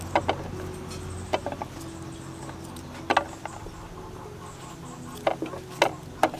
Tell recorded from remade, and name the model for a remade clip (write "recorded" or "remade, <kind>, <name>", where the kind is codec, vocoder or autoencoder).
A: recorded